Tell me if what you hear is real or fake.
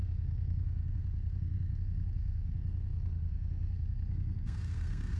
fake